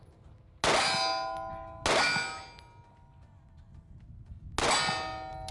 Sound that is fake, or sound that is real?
real